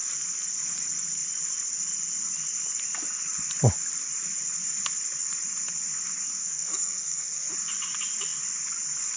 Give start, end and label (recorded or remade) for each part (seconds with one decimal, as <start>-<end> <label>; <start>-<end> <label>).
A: 0.0-6.4 recorded; 6.4-7.5 remade; 7.5-9.2 recorded